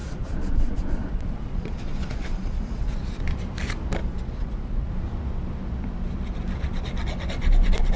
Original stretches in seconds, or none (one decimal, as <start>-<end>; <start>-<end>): 3.2-4.0; 4.9-8.0